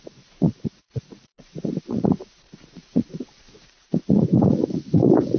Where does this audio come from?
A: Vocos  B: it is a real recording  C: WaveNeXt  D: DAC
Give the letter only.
A